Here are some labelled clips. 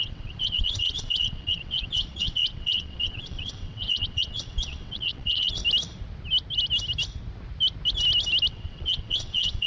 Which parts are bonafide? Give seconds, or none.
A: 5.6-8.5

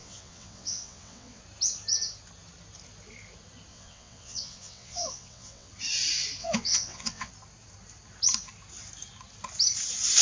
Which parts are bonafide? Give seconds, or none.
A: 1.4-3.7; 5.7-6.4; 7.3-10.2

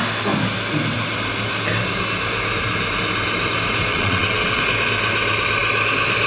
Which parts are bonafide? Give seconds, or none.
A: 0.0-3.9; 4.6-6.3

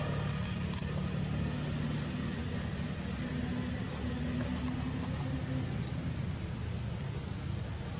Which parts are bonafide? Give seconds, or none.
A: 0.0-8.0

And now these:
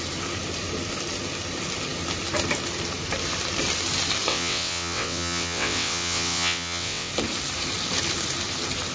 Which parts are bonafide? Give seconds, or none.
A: 0.0-4.3; 7.1-8.9